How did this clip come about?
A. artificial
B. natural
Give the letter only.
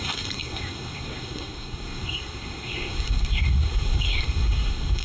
A